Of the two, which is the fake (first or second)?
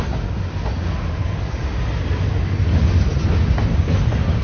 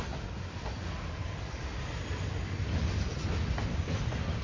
second